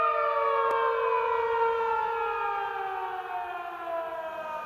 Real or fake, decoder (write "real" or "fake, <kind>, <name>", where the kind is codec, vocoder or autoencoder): real